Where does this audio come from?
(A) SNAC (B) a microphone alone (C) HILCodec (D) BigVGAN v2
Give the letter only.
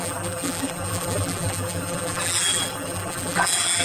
D